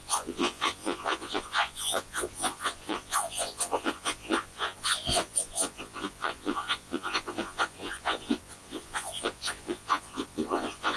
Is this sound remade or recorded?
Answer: remade